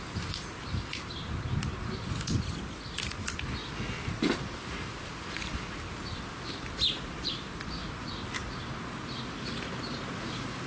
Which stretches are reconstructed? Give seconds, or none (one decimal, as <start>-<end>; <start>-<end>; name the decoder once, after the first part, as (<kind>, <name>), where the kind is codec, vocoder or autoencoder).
none